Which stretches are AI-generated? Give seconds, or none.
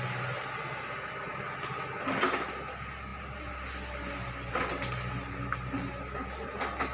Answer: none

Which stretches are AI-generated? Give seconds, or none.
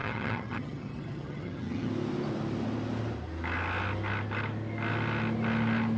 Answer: 0.0-1.9 (vocoder, HiFi-GAN)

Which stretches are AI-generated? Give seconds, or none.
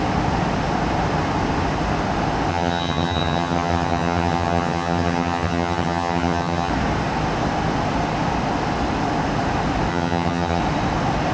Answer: 2.5-6.7 (vocoder, HiFi-GAN); 9.9-10.6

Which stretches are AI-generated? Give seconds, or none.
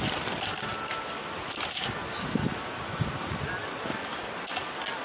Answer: none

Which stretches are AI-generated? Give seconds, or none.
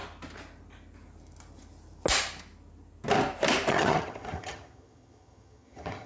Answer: 3.7-6.1 (vocoder, HiFi-GAN)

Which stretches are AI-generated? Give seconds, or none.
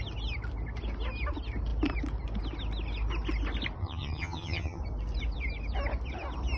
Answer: 3.8-4.8 (vocoder, HiFi-GAN)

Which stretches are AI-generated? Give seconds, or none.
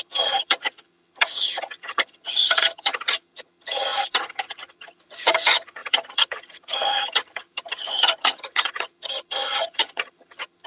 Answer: 0.0-10.7 (vocoder, HiFi-GAN)